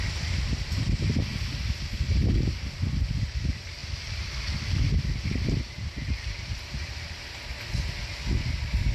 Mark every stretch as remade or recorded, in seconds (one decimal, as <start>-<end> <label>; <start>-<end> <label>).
0.0-1.3 remade; 1.3-3.3 recorded; 3.3-3.8 remade; 3.8-8.9 recorded